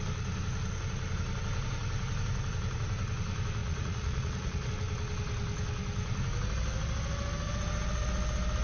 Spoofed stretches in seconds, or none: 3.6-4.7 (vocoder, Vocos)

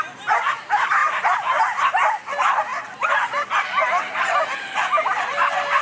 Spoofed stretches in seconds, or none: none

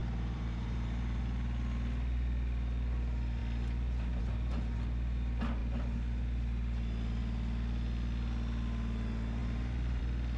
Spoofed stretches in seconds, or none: 0.0-1.2 (vocoder, BigVGAN v2); 9.4-10.0

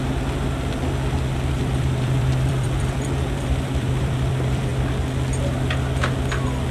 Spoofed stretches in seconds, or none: 1.6-4.7 (vocoder, BigVGAN v2)

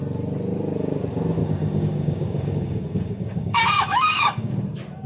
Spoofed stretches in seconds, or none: 1.4-4.5 (codec, DAC)